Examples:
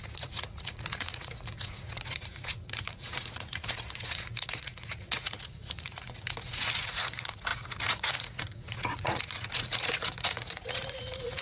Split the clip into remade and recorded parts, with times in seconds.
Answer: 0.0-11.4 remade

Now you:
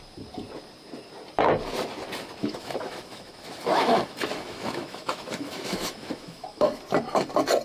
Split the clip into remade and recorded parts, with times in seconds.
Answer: 0.0-2.4 recorded; 2.4-6.8 remade; 6.8-7.6 recorded

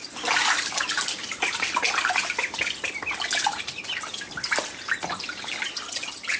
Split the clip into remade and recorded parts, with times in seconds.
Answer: 0.0-6.4 recorded

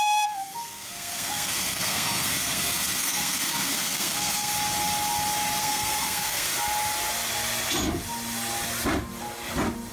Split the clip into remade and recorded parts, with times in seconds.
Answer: 0.0-4.5 remade; 4.5-5.6 recorded; 5.6-6.5 remade; 6.5-9.9 recorded